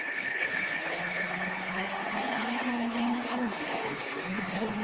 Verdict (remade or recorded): remade